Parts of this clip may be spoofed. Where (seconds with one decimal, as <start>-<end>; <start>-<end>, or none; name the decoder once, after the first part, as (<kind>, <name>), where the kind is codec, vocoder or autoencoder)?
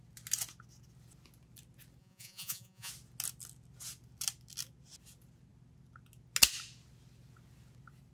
2.0-2.9 (vocoder, Vocos)